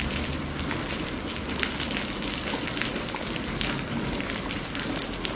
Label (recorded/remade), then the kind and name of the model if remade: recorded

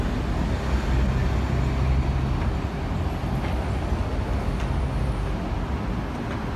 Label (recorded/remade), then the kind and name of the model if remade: recorded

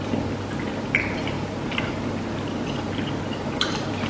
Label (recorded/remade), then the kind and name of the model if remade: recorded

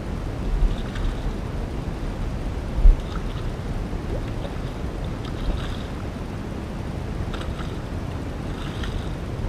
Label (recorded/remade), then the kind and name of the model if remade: recorded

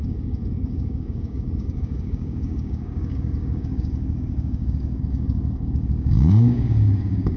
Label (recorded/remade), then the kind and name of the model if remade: remade, codec, DAC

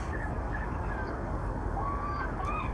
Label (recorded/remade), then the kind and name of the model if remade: remade, codec, DAC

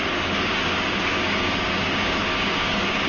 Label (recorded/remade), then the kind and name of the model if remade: remade, codec, DAC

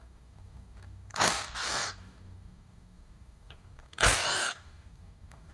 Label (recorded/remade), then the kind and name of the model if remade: remade, codec, DAC